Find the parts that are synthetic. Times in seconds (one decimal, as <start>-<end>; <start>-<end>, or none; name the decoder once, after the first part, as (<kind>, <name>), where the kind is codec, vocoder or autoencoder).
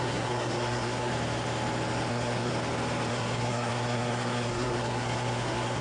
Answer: 0.0-1.1 (codec, SNAC); 2.1-2.5; 3.1-5.8